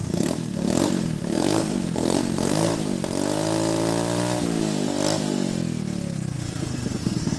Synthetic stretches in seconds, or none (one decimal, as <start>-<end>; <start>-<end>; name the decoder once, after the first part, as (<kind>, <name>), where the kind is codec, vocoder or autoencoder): 0.0-2.7 (codec, SNAC); 7.0-7.4